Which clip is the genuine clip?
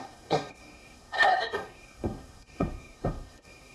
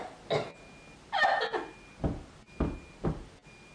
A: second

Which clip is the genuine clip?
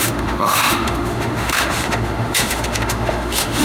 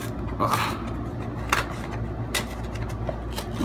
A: second